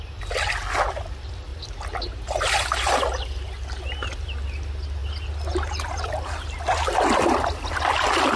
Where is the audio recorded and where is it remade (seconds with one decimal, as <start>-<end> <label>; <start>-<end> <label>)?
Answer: 0.0-8.4 recorded